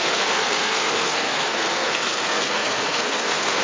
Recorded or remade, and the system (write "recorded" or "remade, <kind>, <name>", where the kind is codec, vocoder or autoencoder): remade, codec, SNAC